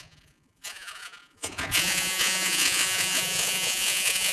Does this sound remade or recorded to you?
remade